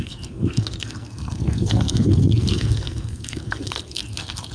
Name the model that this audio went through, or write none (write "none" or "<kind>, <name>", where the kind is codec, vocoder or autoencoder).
codec, SNAC